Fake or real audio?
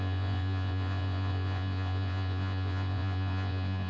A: fake